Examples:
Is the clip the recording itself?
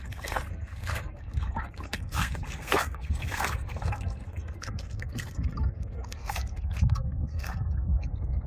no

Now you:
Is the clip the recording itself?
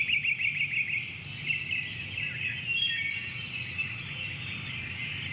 yes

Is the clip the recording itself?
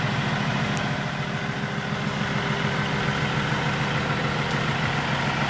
yes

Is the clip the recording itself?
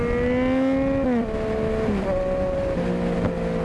yes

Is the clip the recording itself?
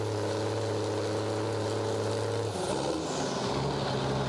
yes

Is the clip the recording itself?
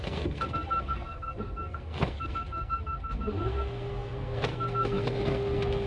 no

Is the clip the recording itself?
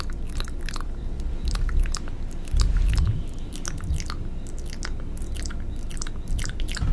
yes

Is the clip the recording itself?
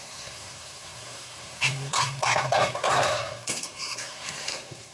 no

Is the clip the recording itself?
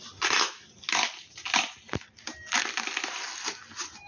yes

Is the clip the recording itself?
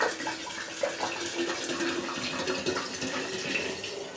yes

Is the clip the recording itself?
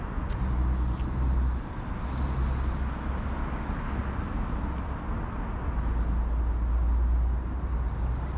yes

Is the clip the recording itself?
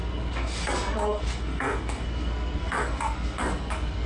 no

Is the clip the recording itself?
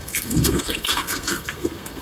no